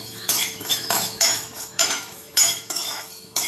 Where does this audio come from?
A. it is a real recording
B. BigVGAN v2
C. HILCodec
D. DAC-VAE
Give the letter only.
D